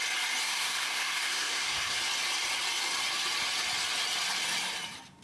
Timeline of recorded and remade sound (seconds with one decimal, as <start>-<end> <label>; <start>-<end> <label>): 0.0-0.4 recorded; 0.4-2.0 remade; 2.0-5.2 recorded